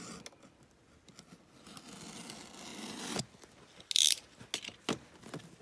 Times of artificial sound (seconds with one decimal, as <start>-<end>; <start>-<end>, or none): none